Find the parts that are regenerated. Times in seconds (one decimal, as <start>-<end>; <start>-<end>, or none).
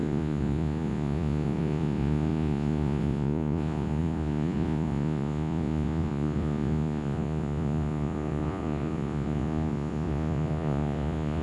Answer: 0.0-11.4